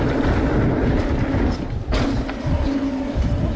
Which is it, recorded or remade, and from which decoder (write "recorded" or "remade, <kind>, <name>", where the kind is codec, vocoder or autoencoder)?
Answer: recorded